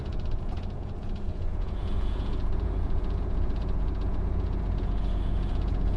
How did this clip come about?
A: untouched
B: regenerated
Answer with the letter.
B